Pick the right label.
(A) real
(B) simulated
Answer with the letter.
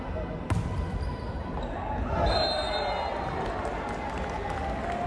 A